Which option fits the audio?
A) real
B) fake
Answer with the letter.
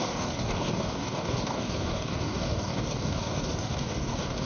B